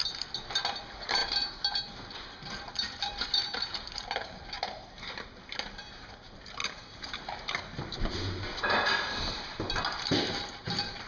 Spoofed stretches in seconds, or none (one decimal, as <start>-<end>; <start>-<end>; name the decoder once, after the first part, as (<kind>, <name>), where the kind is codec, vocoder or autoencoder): 1.2-6.1 (vocoder, BigVGAN v2); 6.6-11.1